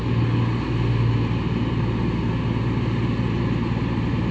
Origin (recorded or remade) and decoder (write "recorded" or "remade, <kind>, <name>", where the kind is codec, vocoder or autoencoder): recorded